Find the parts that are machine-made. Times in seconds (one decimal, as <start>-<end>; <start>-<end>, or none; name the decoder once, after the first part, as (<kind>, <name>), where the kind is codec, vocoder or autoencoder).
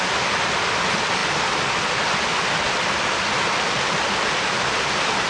none